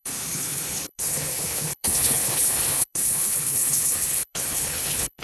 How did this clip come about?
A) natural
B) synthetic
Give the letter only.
B